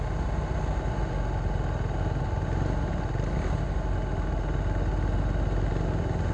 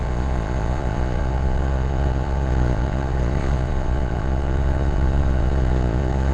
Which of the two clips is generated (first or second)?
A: second